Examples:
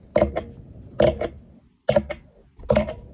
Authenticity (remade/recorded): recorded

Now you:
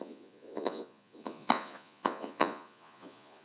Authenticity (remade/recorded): remade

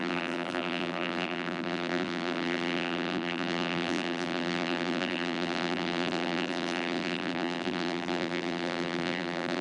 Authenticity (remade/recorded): remade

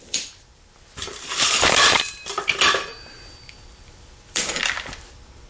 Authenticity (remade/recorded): remade